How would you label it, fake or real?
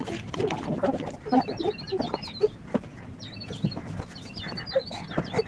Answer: real